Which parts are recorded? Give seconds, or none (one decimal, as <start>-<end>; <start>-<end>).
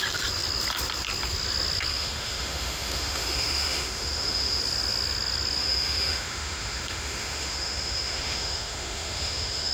0.0-1.9; 4.6-5.6